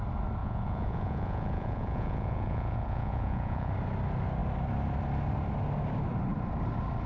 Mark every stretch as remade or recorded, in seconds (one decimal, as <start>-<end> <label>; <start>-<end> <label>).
0.0-0.4 recorded; 0.4-3.7 remade; 3.7-7.1 recorded